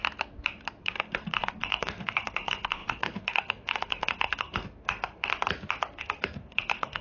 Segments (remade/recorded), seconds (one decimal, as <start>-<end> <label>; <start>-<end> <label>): 0.0-0.8 recorded; 0.8-5.3 remade; 5.3-6.0 recorded; 6.0-7.0 remade